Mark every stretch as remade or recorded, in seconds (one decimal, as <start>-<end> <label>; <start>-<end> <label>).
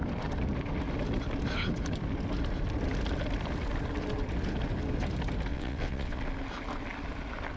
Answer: 0.0-5.5 recorded; 5.5-6.2 remade; 6.2-7.6 recorded